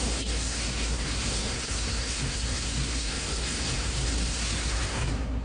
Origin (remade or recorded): remade